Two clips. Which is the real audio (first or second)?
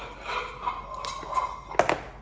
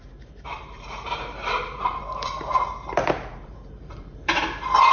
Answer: first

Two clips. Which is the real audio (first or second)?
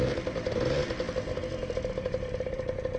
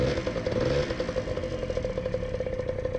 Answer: second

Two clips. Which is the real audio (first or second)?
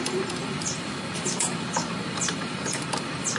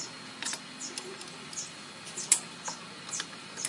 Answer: second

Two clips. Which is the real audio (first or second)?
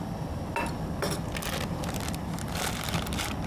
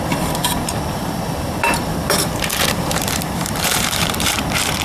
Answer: first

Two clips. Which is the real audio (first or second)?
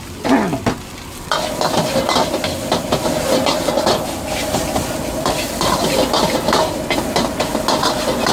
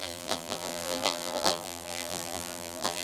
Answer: first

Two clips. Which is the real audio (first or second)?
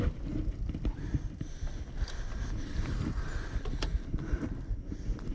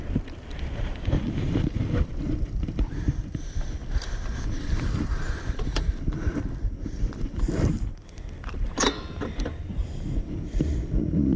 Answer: first